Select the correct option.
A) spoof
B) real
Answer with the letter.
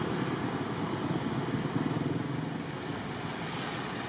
B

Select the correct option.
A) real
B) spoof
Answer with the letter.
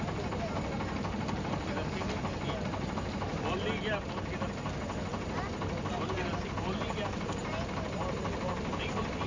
A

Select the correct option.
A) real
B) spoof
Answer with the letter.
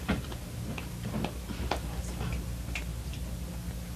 A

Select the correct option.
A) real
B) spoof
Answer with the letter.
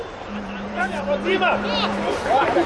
B